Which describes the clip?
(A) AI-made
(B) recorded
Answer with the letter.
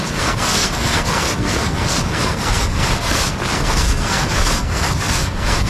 A